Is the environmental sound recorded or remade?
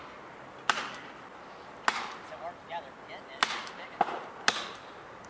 recorded